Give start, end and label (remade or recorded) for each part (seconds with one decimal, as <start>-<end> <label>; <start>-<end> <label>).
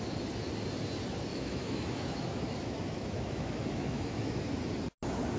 0.0-1.3 recorded; 1.3-4.4 remade; 4.4-5.4 recorded